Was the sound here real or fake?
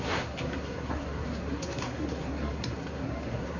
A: fake